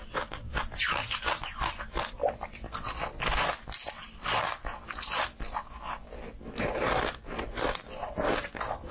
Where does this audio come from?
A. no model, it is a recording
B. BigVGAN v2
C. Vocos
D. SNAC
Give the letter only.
A